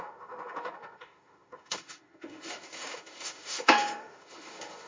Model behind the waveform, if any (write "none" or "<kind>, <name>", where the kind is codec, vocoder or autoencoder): autoencoder, DAC-VAE